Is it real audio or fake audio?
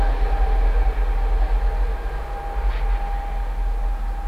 real